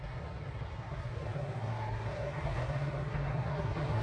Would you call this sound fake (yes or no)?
yes